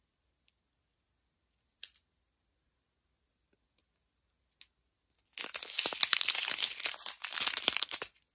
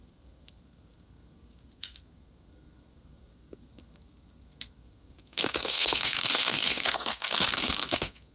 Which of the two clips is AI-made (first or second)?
second